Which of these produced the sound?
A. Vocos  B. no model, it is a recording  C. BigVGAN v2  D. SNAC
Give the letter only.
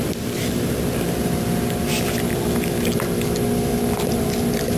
C